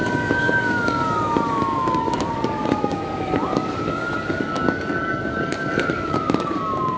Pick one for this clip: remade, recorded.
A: remade